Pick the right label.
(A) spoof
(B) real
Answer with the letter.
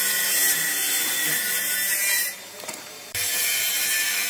A